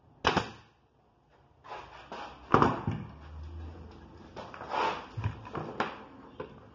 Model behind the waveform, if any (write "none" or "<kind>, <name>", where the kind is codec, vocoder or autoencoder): none